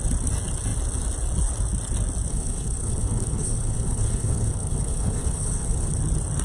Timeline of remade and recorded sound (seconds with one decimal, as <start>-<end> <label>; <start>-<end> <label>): 0.0-2.3 recorded; 2.3-6.0 remade; 6.0-6.4 recorded